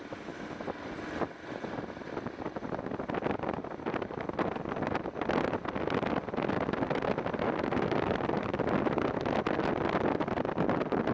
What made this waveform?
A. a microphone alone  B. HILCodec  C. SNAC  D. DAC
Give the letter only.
A